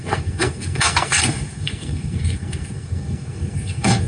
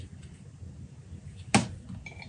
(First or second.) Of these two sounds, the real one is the second